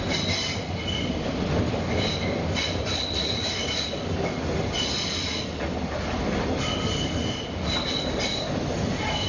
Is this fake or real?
real